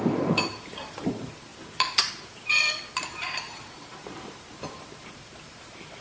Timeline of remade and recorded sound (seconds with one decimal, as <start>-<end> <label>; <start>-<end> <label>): 0.0-6.0 remade